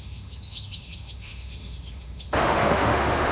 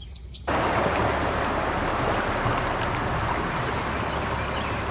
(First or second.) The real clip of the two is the second